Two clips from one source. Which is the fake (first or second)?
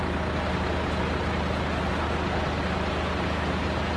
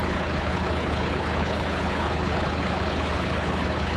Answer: second